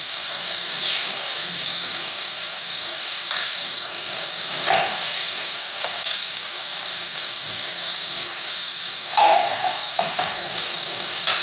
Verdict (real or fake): fake